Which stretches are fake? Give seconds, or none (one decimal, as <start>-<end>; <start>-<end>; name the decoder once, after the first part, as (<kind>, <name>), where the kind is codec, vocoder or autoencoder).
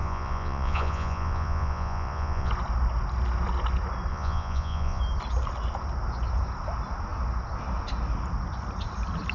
0.0-2.5 (vocoder, Vocos); 4.1-5.0